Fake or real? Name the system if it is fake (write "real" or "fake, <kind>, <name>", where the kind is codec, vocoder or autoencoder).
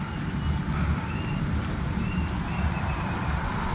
real